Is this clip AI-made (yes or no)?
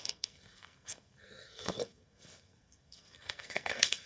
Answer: yes